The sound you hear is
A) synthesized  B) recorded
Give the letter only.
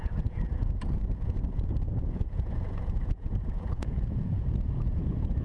A